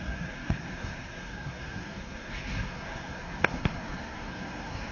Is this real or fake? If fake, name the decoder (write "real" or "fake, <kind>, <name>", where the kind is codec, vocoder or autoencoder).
fake, codec, SNAC